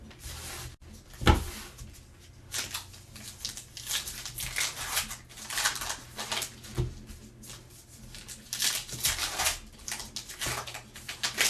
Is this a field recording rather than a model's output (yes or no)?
yes